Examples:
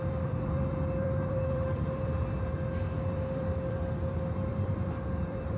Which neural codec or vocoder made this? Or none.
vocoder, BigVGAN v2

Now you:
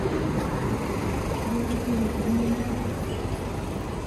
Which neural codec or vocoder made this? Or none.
none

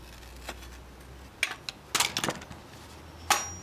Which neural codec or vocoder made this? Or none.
none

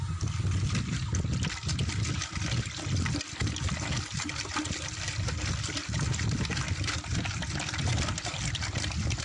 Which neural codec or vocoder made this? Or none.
none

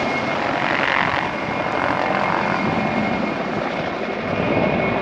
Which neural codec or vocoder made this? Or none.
none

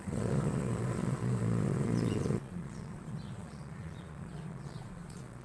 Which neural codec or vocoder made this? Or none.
vocoder, Vocos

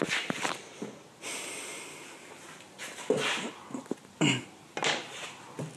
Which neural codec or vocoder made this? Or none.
none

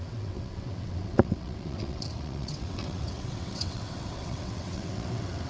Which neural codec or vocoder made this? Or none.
vocoder, WaveNeXt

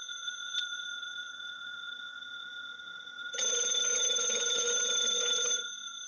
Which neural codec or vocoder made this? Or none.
vocoder, HiFi-GAN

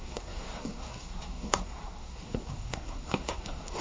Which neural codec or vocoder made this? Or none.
codec, SNAC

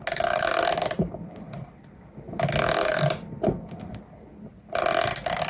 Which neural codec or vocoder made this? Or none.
none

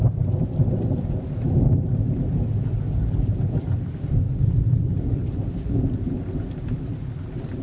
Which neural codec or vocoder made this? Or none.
none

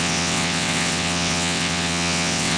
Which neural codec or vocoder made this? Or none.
vocoder, WaveNeXt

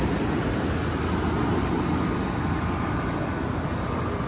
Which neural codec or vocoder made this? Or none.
none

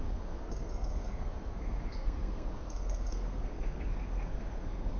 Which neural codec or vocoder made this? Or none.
codec, SNAC